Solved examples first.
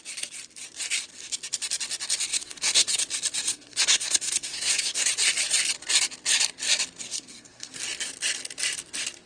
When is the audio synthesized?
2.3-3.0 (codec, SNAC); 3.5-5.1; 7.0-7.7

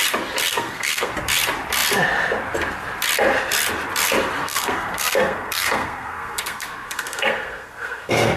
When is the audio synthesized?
0.5-1.1 (codec, SNAC); 4.4-8.4

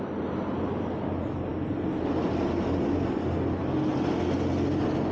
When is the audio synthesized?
none

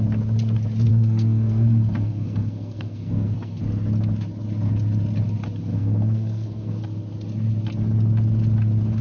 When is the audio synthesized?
0.9-3.6 (codec, SNAC); 5.7-6.8

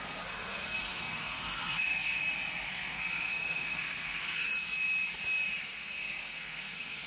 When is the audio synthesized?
0.0-2.2 (codec, SNAC); 2.7-4.5; 5.6-7.1